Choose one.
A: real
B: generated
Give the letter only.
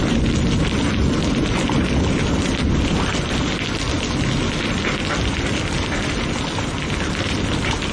A